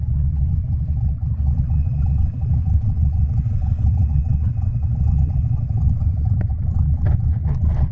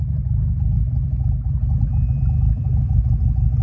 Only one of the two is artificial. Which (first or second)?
first